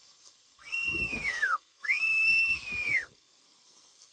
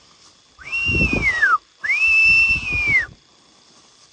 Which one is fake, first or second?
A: first